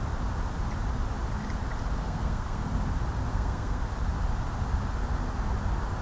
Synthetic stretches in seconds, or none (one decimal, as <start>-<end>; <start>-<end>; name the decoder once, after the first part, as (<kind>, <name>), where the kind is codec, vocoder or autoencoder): 2.0-2.6 (codec, SNAC); 3.3-3.8